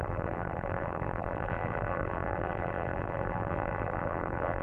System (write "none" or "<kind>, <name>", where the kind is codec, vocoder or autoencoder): vocoder, BigVGAN v2